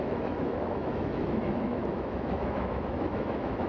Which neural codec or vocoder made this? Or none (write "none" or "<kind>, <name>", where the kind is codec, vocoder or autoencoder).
autoencoder, DAC-VAE